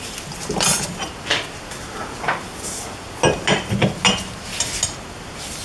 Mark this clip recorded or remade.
recorded